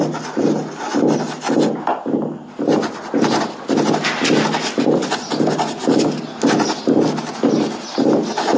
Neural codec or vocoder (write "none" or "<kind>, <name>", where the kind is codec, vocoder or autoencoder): none